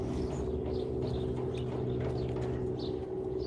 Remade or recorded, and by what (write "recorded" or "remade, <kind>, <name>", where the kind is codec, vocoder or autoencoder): recorded